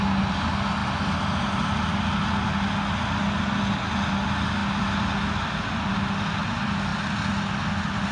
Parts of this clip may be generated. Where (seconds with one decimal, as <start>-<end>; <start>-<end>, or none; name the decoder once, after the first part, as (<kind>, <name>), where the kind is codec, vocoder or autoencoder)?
none